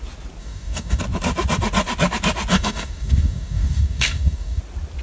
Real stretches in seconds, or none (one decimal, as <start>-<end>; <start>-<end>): 0.0-0.4; 1.0-2.5; 4.6-5.0